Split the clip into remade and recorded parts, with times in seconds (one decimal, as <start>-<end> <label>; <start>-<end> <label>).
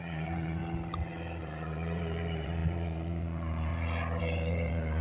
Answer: 0.0-0.6 remade; 0.6-1.4 recorded; 1.4-3.7 remade; 3.7-4.2 recorded; 4.2-5.0 remade